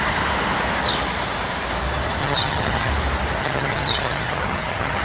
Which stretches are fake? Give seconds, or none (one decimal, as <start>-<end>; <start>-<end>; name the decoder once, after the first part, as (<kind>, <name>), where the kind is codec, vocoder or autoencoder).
2.2-2.9 (vocoder, HiFi-GAN); 3.4-5.0